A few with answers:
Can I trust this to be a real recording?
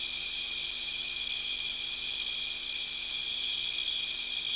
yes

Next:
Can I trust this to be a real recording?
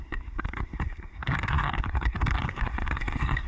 no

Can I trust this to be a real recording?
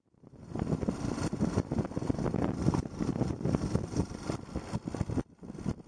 yes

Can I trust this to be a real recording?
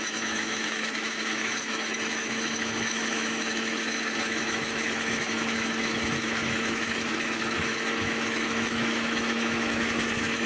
no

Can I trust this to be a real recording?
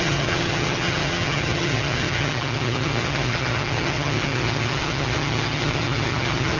no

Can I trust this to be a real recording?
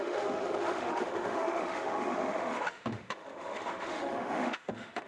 no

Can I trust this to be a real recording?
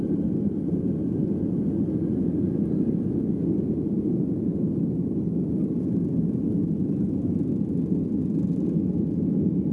yes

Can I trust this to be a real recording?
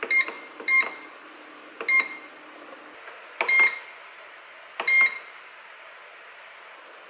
yes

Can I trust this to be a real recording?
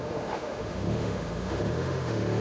no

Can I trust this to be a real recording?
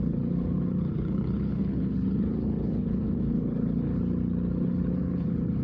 no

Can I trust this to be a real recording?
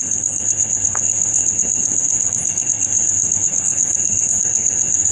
no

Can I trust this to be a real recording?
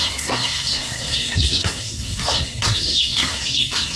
no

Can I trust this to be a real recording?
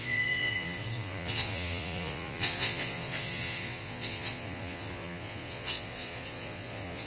no